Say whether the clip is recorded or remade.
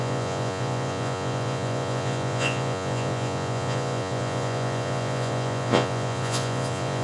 remade